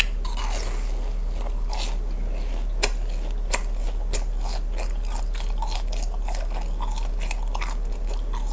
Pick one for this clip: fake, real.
real